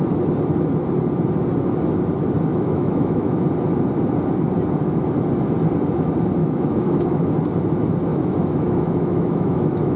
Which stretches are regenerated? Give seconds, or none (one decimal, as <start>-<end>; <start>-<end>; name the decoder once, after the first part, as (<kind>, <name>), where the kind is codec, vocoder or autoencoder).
2.5-3.4 (autoencoder, DAC-VAE); 6.4-7.3; 8.1-10.0